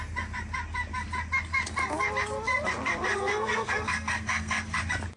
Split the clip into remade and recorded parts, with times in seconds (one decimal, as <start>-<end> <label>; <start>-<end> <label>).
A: 0.0-3.1 recorded; 3.1-4.8 remade; 4.8-5.2 recorded